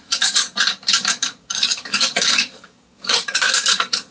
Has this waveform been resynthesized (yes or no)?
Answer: yes